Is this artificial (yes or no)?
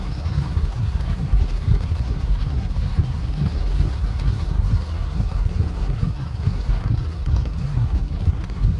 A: yes